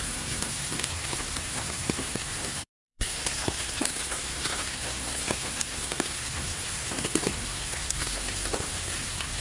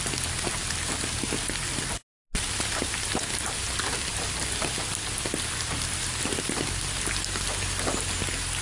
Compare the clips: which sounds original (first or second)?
second